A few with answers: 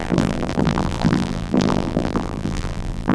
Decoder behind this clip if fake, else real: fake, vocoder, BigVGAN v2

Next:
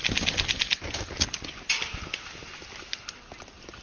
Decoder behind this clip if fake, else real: real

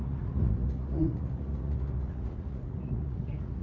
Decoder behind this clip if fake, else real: fake, vocoder, Vocos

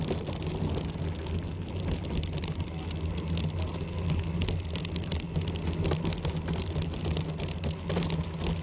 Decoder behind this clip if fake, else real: real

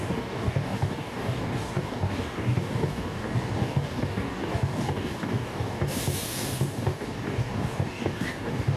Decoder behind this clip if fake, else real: fake, codec, DAC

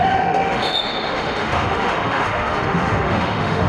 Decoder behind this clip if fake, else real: fake, autoencoder, DAC-VAE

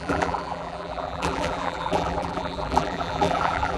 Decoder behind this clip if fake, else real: fake, vocoder, BigVGAN v2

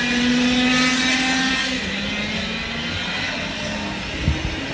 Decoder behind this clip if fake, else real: real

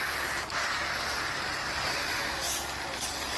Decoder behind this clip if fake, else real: real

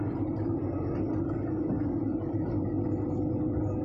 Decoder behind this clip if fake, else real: real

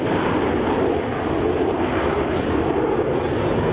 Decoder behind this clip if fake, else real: real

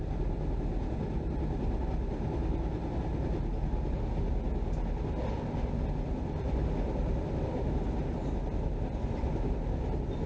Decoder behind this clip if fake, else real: real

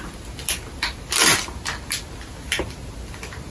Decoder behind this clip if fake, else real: real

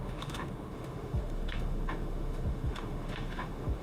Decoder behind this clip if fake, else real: fake, autoencoder, DAC-VAE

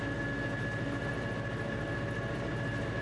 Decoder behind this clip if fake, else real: real